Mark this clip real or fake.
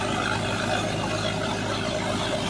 real